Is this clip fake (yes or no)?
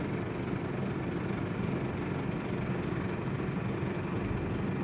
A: no